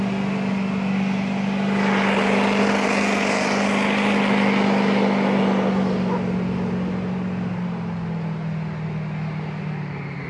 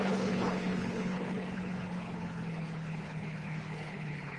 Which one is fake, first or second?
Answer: second